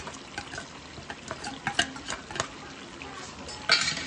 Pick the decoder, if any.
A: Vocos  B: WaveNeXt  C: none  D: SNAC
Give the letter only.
C